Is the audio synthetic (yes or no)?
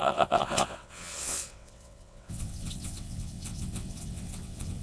yes